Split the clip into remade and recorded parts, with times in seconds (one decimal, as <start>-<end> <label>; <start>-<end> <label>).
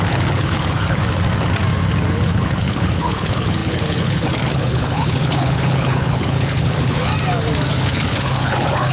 0.0-1.0 remade; 1.0-2.1 recorded; 2.1-7.1 remade; 7.1-7.7 recorded; 7.7-8.9 remade